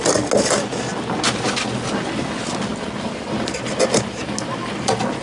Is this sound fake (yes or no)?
no